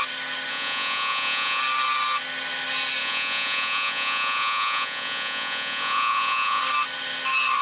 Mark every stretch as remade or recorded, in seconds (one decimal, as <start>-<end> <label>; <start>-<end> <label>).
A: 0.0-0.5 recorded; 0.5-1.6 remade; 1.6-3.0 recorded; 3.0-6.6 remade; 6.6-7.6 recorded